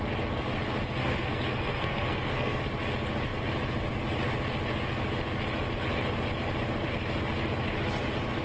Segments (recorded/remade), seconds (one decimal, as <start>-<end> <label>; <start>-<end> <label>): 0.0-1.0 recorded; 1.0-2.6 remade; 2.6-8.4 recorded